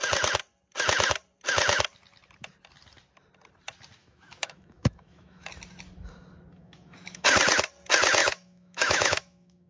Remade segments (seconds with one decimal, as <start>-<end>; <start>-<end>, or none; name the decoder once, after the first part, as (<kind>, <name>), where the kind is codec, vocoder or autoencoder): 4.0-5.5 (autoencoder, DAC-VAE); 6.5-7.3; 8.2-9.7